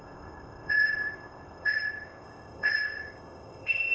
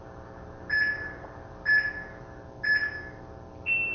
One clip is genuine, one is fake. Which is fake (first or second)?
first